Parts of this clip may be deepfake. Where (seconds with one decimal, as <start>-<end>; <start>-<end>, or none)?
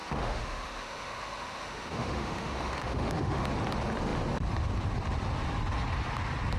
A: 0.0-3.4